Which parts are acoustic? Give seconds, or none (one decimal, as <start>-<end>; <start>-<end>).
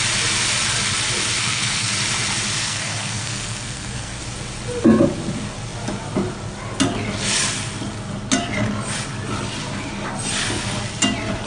0.0-1.4; 1.9-2.6; 4.2-11.5